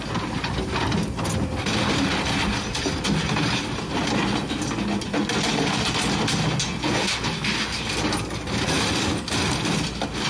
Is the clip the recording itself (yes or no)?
yes